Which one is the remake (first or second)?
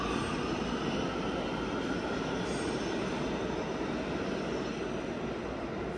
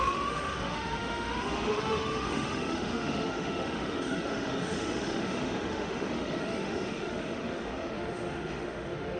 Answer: second